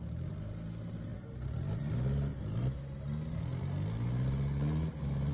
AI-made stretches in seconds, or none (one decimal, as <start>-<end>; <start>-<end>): none